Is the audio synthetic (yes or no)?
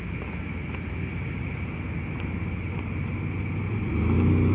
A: no